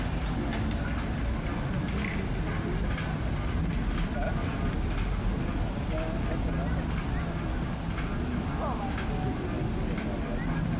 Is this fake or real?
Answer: real